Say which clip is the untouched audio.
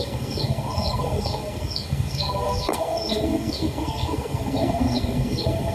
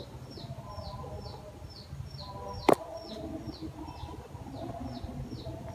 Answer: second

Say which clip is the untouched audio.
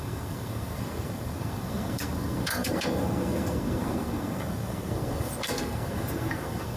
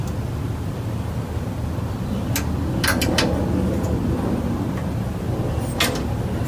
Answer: second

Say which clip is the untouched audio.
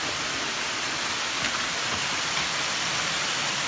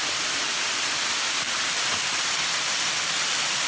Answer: first